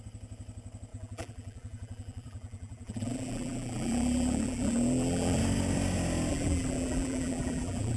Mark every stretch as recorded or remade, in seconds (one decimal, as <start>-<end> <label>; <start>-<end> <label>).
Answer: 0.0-0.9 recorded; 0.9-5.4 remade; 5.4-6.3 recorded; 6.3-8.0 remade